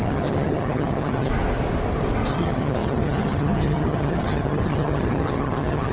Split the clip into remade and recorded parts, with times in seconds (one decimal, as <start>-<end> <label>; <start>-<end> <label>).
0.0-1.3 remade; 1.3-2.3 recorded; 2.3-5.9 remade

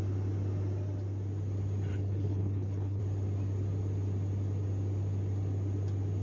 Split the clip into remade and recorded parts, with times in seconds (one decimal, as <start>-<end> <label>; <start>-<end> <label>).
0.0-1.9 recorded; 1.9-3.0 remade; 3.0-6.2 recorded

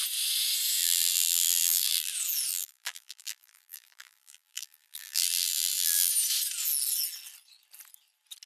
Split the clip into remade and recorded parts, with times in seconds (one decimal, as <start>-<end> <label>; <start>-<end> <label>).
0.0-0.8 recorded; 0.8-2.1 remade; 2.1-2.5 recorded; 2.5-6.1 remade; 6.1-8.5 recorded

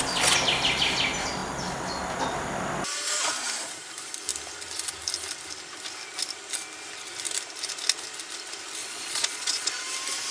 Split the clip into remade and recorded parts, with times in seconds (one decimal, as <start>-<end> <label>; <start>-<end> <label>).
0.0-8.8 recorded; 8.8-9.7 remade; 9.7-10.3 recorded

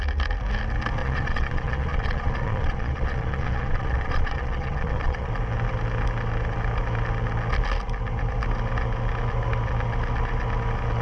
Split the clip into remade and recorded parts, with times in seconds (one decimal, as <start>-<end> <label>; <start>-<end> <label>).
0.0-1.0 recorded; 1.0-5.3 remade; 5.3-11.0 recorded

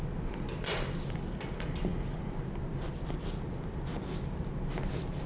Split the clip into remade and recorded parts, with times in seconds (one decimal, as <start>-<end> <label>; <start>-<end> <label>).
0.0-5.3 recorded